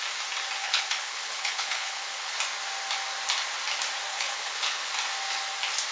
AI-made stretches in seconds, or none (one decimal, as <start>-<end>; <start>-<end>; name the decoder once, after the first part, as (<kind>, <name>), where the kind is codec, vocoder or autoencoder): 0.6-2.3 (codec, HILCodec); 4.1-4.9